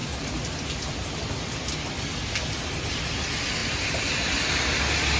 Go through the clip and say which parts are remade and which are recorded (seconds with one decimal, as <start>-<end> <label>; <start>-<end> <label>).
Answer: 0.0-2.1 remade; 2.1-3.6 recorded; 3.6-4.8 remade; 4.8-5.2 recorded